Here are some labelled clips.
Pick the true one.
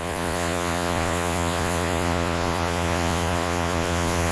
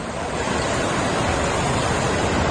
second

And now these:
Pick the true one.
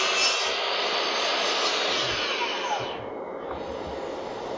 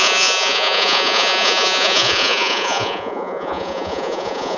first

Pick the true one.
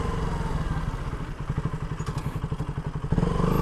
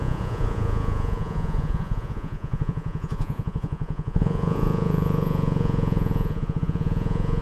first